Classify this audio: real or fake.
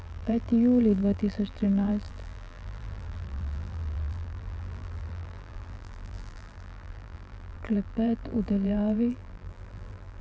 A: fake